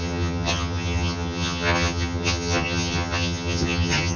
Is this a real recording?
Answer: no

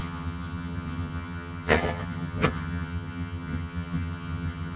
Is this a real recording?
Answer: no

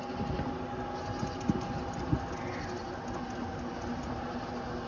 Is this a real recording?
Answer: yes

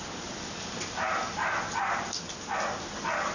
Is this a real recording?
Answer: yes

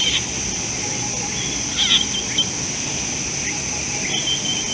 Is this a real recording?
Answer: yes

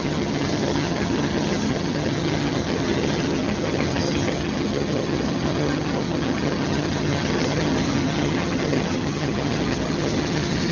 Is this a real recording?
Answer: no